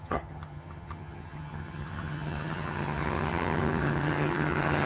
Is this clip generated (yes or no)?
yes